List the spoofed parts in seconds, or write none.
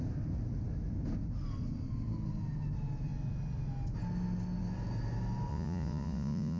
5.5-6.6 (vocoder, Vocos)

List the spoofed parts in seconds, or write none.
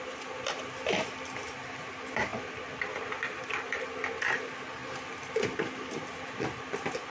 none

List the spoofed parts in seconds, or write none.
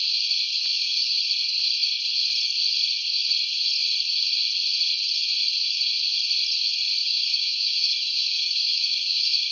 0.7-1.2 (autoencoder, DAC-VAE); 7.0-9.5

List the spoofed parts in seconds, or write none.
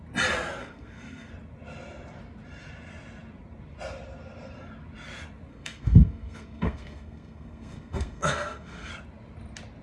0.6-1.3 (codec, SNAC); 5.5-8.9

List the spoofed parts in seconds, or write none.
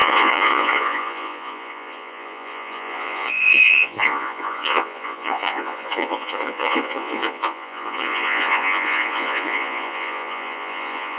0.0-11.2 (vocoder, Vocos)